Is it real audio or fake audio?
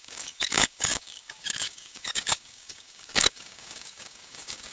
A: fake